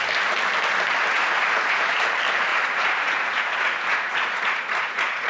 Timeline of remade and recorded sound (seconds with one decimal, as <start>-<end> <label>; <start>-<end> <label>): 0.0-1.1 recorded; 1.1-2.0 remade; 2.0-2.5 recorded; 2.5-5.3 remade